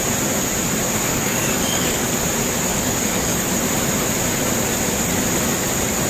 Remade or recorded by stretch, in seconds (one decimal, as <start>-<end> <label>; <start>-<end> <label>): 0.0-1.1 recorded; 1.1-2.1 remade; 2.1-2.7 recorded; 2.7-3.4 remade; 3.4-6.1 recorded